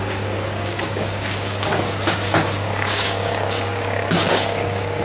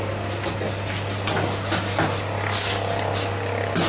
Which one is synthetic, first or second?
first